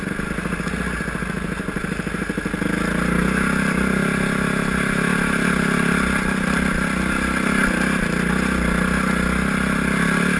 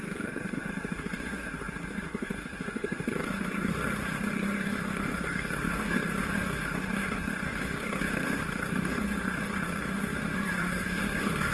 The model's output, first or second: second